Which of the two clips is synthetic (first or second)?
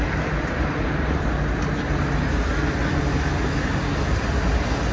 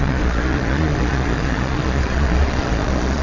second